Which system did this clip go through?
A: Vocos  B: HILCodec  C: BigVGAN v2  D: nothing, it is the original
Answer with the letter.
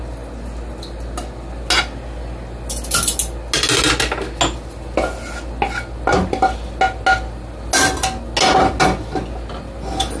D